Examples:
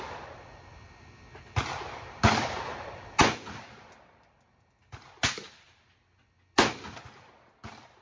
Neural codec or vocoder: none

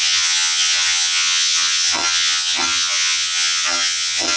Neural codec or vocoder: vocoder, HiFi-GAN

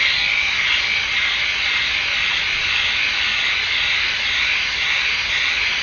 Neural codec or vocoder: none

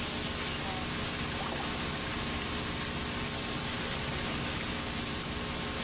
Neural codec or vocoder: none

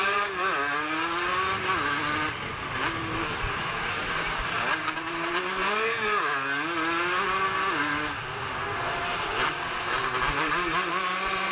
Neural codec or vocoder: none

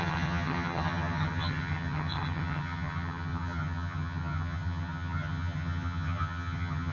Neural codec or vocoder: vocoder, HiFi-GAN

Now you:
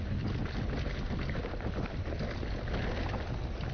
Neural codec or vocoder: none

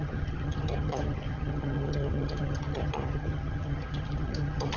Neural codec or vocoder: vocoder, HiFi-GAN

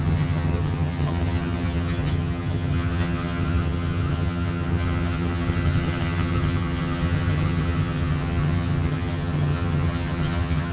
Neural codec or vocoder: vocoder, HiFi-GAN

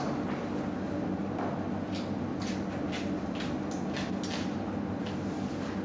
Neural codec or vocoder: none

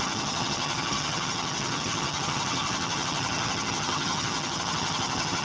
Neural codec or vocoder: vocoder, HiFi-GAN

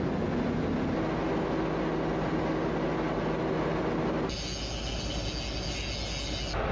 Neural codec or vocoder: none